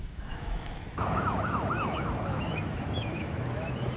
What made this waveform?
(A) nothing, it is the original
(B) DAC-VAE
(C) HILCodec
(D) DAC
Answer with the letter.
B